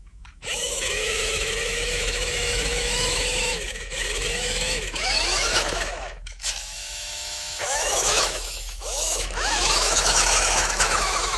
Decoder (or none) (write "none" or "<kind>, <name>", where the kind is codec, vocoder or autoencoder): autoencoder, DAC-VAE